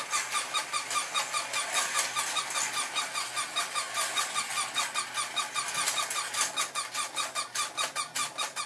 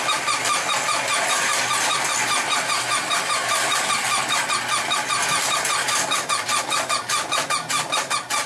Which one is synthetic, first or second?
second